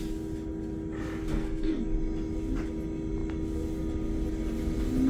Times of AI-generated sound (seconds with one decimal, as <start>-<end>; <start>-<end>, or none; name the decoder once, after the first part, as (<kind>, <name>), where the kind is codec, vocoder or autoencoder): 1.3-1.8 (codec, SNAC)